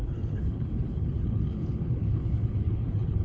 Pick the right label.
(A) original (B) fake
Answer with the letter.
B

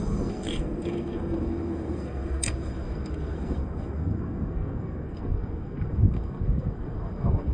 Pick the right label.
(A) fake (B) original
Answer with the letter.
A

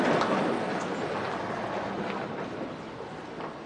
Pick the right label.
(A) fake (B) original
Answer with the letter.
B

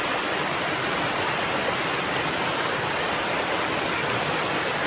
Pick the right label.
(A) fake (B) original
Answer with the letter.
B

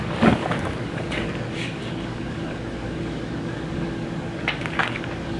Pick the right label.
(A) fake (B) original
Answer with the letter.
A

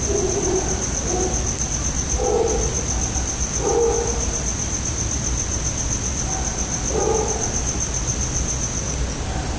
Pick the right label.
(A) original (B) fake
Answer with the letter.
A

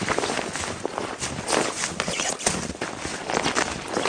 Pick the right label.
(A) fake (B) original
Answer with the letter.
B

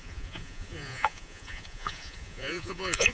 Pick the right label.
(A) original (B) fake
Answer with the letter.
B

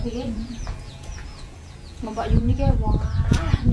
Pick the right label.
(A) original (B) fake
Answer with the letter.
B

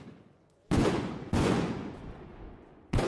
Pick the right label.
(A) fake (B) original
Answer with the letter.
A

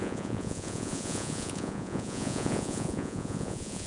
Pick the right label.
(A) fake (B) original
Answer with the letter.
A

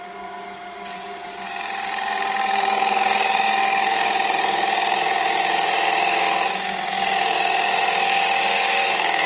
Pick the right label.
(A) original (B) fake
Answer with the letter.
B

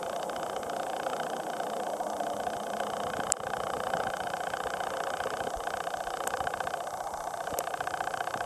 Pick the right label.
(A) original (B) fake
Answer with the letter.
A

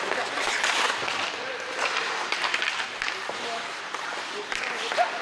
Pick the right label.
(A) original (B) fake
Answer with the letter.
A